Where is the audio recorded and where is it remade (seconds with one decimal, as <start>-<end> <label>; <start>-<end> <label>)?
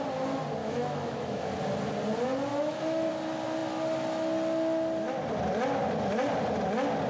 0.0-0.6 recorded; 0.6-1.5 remade; 1.5-2.5 recorded; 2.5-3.1 remade; 3.1-7.1 recorded